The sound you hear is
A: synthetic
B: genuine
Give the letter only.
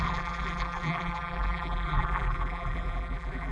A